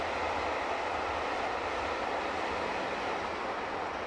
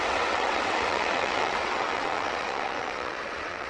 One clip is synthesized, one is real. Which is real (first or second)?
first